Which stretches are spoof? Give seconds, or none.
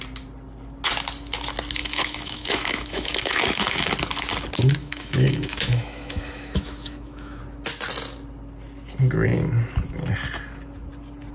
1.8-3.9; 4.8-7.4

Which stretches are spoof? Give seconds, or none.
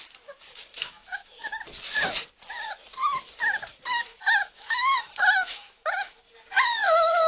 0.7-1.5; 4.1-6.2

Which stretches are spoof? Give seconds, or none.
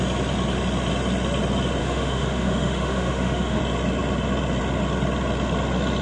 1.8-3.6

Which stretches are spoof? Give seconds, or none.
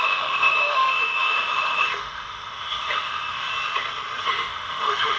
0.0-3.5; 4.2-5.2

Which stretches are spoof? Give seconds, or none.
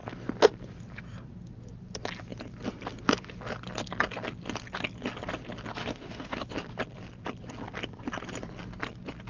5.8-6.5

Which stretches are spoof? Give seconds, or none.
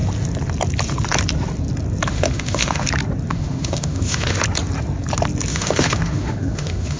2.1-2.9; 3.3-4.4; 5.5-7.0